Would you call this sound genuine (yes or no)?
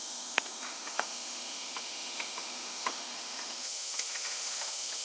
no